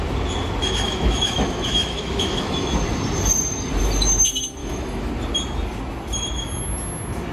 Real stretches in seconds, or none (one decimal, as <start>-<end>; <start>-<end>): 0.0-0.6; 2.7-4.6; 5.1-7.3